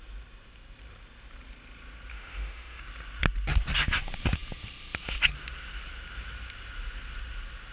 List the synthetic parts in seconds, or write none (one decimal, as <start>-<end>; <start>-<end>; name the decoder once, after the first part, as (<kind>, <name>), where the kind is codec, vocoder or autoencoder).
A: 2.1-2.8 (autoencoder, DAC-VAE)